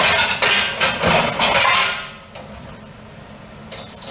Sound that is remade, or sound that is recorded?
recorded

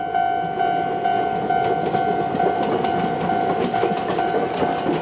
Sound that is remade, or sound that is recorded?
recorded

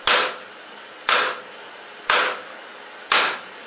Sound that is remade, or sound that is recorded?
recorded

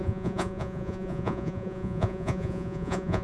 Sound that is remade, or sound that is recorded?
remade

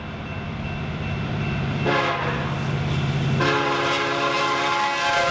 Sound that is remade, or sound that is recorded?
recorded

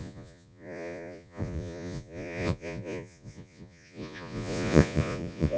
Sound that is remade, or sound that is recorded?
remade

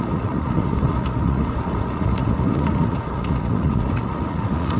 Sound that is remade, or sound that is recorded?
remade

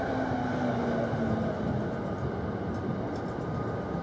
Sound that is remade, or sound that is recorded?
recorded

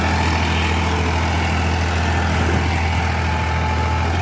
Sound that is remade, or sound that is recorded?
recorded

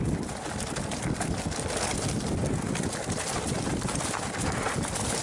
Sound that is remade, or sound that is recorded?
recorded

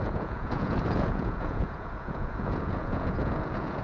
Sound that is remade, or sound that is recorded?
remade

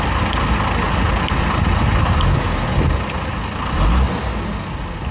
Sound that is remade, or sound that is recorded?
recorded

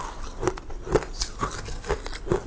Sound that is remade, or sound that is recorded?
recorded